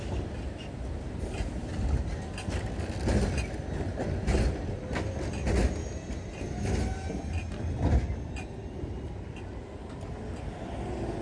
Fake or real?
real